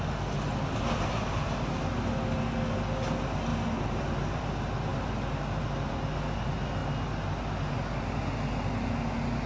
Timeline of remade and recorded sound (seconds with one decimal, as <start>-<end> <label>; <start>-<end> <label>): 0.0-3.5 recorded; 3.5-4.4 remade; 4.4-9.5 recorded